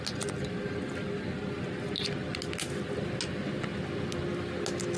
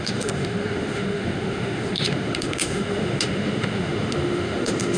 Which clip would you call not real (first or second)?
second